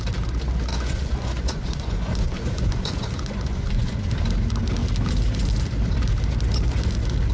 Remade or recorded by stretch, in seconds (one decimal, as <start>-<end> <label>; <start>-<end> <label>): 0.0-0.7 recorded; 0.7-4.1 remade; 4.1-7.3 recorded